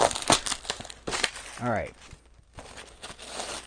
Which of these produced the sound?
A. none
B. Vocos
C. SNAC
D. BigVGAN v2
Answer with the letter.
A